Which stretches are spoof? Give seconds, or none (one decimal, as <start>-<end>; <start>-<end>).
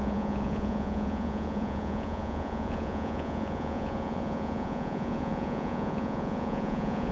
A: 0.0-7.1